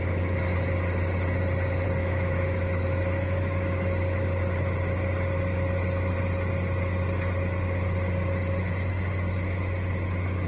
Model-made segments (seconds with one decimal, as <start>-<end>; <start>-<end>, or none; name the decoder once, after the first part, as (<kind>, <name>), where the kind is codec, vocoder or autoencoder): 2.0-4.2 (autoencoder, DAC-VAE)